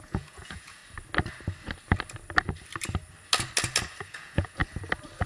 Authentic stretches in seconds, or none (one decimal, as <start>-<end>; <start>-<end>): 0.8-4.0; 4.6-5.3